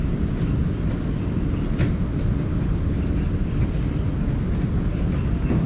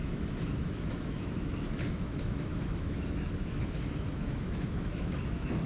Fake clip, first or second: second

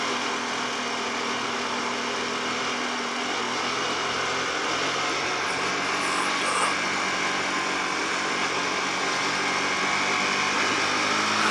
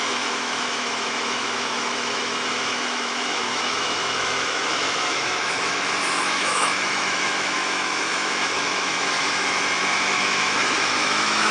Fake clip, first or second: second